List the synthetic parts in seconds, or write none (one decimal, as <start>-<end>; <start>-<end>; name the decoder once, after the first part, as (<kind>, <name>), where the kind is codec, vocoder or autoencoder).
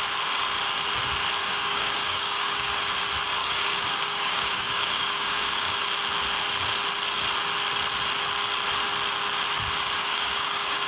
1.4-2.8 (codec, DAC); 3.4-5.8; 10.0-10.9